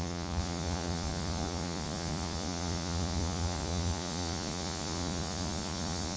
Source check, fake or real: fake